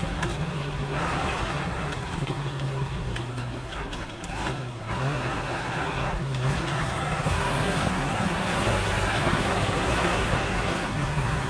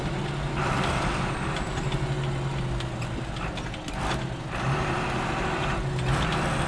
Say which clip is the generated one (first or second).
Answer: first